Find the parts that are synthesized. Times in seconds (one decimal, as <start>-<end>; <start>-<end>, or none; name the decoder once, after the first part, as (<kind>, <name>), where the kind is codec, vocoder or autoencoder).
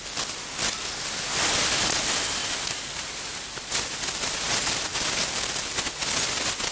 2.4-4.3 (vocoder, BigVGAN v2)